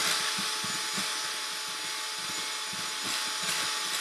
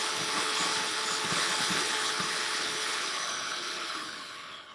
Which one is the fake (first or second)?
second